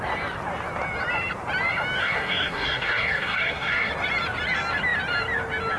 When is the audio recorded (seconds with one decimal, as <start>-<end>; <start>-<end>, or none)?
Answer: 0.0-2.0; 3.9-5.8